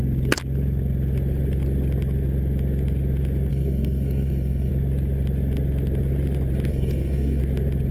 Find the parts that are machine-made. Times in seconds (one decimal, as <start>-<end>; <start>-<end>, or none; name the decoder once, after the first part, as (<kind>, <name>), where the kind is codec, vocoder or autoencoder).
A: 3.5-4.7 (codec, SNAC); 6.7-7.4